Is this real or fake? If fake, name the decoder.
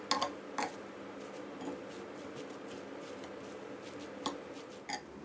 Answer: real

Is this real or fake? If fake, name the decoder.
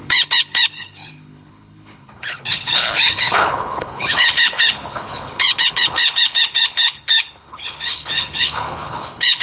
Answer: fake, codec, HILCodec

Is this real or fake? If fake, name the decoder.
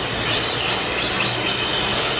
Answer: real